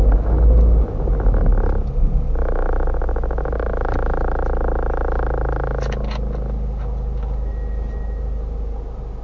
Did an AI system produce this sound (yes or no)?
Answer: no